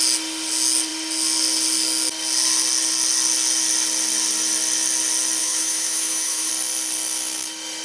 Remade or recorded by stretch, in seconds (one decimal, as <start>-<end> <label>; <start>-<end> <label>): 0.0-5.4 recorded; 5.4-6.5 remade; 6.5-7.8 recorded